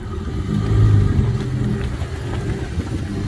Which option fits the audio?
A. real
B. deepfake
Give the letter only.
A